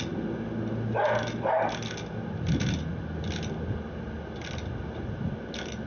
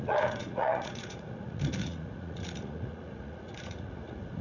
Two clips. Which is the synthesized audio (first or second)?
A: second